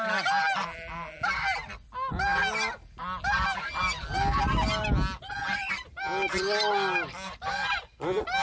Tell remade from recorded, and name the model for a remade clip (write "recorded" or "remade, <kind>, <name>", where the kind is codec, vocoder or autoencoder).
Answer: recorded